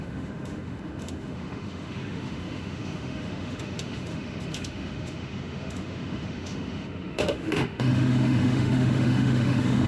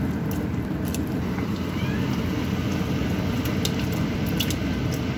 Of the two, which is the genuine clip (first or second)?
second